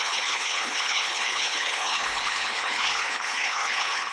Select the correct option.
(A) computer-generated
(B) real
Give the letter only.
A